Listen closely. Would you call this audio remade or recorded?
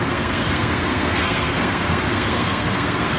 remade